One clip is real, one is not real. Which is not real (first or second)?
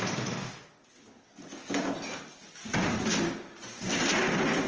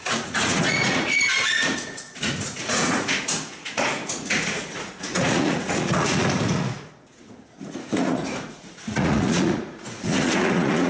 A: second